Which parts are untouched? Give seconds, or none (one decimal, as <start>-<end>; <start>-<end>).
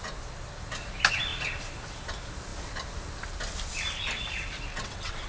0.0-4.7